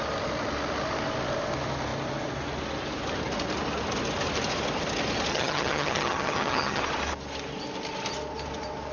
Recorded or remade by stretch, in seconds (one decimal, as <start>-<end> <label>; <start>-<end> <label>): 0.0-5.3 recorded; 5.3-6.8 remade; 6.8-8.9 recorded